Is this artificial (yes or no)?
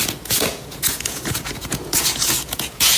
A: yes